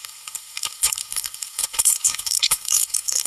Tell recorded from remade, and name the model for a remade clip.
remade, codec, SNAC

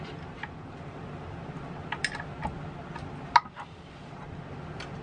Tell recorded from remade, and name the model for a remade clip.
recorded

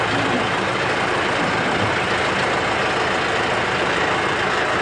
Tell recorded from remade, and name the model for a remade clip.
recorded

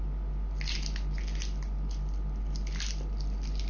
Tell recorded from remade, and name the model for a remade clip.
recorded